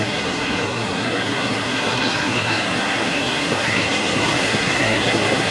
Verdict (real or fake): fake